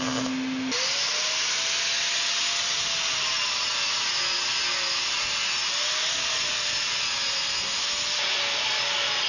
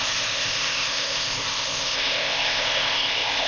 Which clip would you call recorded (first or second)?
first